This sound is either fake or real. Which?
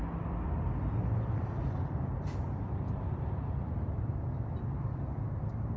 real